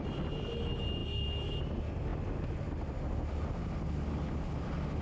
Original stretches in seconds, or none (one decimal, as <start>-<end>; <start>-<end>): 0.0-5.0